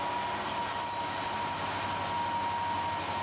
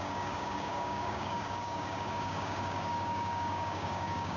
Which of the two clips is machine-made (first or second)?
second